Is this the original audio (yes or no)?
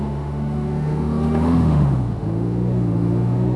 no